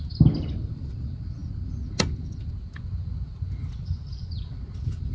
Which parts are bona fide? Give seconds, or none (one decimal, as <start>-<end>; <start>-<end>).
0.0-5.1